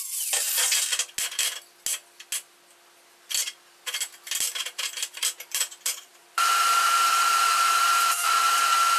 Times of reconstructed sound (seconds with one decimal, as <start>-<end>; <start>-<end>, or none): 4.5-8.6